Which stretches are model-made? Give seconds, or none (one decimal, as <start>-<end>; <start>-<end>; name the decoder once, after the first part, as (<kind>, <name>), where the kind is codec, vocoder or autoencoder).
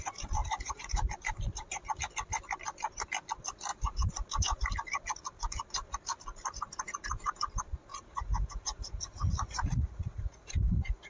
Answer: 0.4-1.1 (vocoder, Vocos); 3.7-4.7; 7.9-11.1